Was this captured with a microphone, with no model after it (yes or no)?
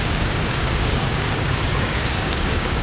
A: no